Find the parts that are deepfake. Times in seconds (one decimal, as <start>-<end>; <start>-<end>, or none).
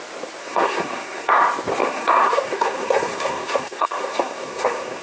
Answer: 0.4-1.3; 1.8-5.0